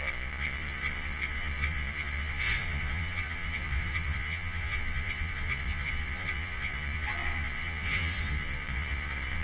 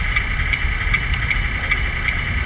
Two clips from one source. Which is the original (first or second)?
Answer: second